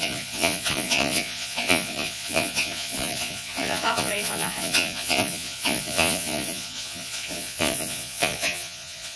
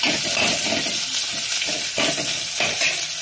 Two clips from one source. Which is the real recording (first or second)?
second